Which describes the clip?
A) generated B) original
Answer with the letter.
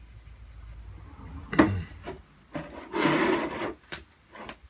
B